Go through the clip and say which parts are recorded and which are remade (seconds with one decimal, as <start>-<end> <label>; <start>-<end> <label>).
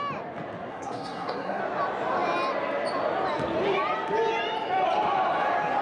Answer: 0.0-0.7 recorded; 0.7-1.6 remade; 1.6-5.8 recorded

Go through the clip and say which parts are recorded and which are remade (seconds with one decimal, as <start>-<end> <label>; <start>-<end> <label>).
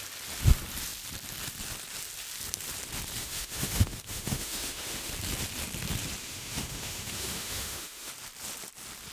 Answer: 0.0-3.2 recorded; 3.2-5.1 remade; 5.1-6.2 recorded; 6.2-8.1 remade; 8.1-9.1 recorded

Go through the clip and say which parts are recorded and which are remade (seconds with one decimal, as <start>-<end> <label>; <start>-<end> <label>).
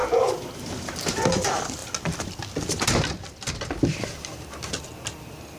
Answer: 0.0-5.6 recorded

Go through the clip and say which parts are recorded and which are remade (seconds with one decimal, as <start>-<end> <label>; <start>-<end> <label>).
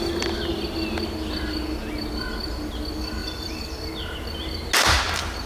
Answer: 0.0-3.2 recorded; 3.2-3.9 remade; 3.9-5.5 recorded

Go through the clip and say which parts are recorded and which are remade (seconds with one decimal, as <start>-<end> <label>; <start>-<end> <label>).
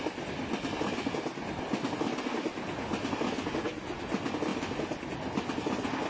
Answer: 0.0-6.1 recorded